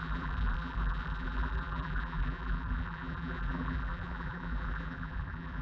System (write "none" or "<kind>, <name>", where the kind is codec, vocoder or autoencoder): vocoder, BigVGAN v2